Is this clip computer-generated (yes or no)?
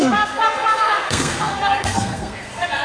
yes